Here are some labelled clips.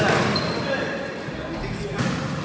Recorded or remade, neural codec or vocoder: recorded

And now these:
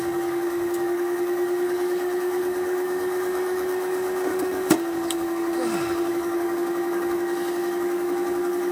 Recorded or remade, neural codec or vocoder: remade, codec, DAC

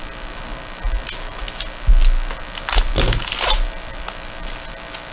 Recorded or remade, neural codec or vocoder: recorded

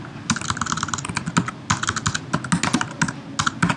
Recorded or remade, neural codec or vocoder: recorded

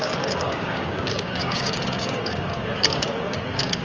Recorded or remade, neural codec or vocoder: remade, codec, DAC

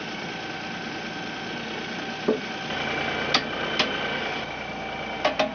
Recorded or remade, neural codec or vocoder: recorded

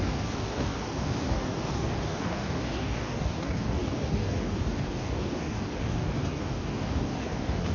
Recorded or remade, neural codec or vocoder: remade, codec, DAC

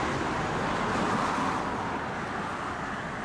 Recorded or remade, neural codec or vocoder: recorded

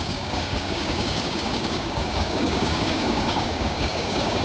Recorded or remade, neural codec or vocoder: remade, codec, DAC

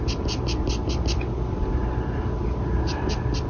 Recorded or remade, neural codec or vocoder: recorded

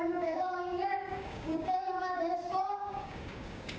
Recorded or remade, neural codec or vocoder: remade, codec, DAC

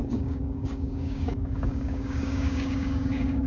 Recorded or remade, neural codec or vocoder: remade, codec, DAC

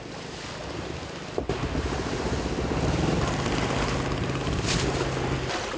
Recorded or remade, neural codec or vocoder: recorded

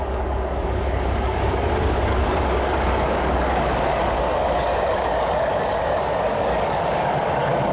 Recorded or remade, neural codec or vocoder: remade, codec, DAC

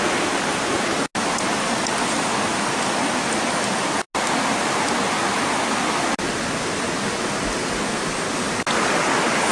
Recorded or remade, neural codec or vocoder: recorded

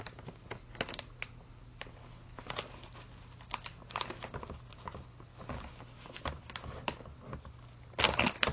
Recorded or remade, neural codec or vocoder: recorded